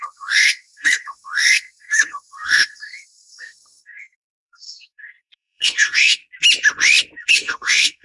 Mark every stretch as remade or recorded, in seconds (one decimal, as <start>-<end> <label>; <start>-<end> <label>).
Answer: 0.0-6.2 remade; 6.2-7.3 recorded; 7.3-8.0 remade